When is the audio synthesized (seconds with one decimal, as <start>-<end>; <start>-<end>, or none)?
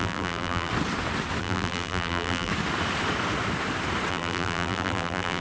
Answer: 0.0-0.7; 1.4-2.5; 4.1-5.4